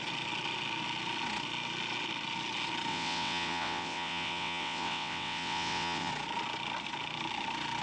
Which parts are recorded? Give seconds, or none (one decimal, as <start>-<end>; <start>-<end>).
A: 0.0-2.9; 6.1-7.8